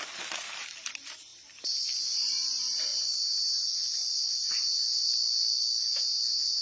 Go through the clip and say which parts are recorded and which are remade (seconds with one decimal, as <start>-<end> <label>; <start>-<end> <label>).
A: 0.0-1.3 remade; 1.3-2.0 recorded; 2.0-2.9 remade; 2.9-3.5 recorded; 3.5-4.0 remade; 4.0-5.8 recorded; 5.8-6.6 remade